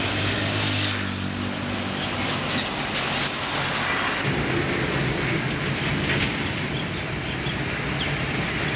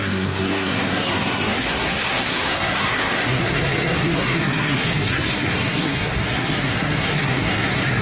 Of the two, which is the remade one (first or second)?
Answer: second